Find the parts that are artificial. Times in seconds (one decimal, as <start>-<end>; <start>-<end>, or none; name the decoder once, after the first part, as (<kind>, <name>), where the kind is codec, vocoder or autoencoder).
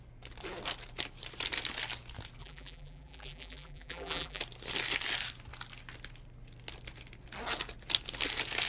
2.4-4.4 (vocoder, BigVGAN v2)